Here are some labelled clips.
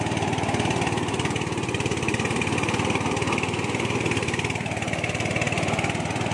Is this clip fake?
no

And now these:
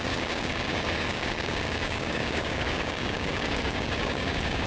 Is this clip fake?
yes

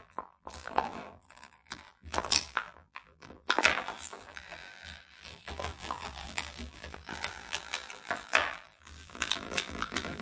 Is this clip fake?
yes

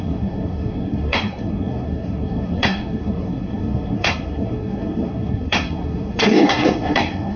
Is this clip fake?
yes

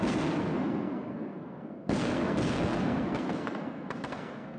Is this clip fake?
yes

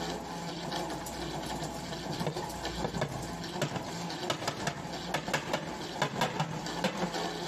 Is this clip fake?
no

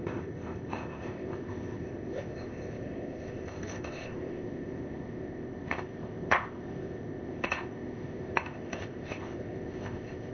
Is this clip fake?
yes